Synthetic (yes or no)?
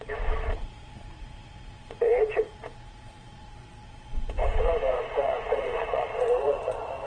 yes